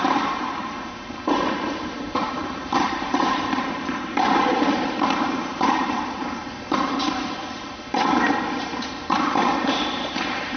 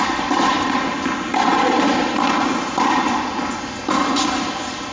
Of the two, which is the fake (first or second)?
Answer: first